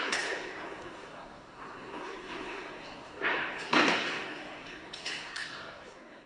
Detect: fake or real fake